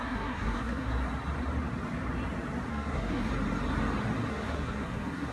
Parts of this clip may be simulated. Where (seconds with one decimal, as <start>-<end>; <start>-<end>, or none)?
0.0-0.9; 2.7-3.3; 4.3-5.3